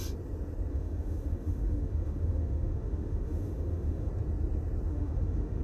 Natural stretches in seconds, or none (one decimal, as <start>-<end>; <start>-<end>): 0.0-0.7; 4.1-4.9